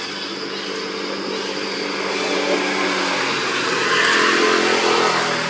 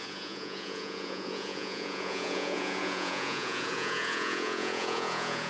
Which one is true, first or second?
first